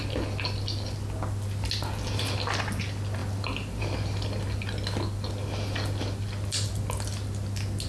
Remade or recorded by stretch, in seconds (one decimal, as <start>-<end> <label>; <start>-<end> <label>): 0.0-7.9 recorded